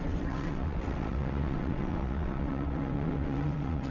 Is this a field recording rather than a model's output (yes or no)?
no